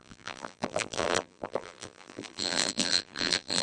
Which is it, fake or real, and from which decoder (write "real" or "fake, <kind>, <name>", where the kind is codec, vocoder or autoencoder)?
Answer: fake, vocoder, BigVGAN v2